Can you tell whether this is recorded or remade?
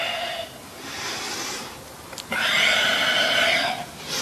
recorded